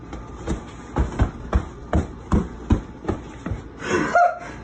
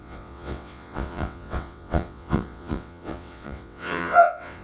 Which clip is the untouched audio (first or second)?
first